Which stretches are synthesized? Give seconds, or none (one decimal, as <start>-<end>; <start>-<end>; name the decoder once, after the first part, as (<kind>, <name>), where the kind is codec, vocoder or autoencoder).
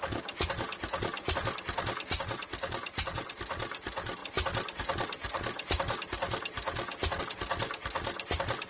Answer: none